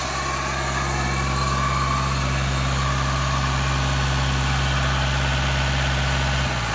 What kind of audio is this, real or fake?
real